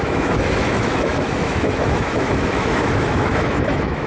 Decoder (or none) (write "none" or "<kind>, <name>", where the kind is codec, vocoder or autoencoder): autoencoder, DAC-VAE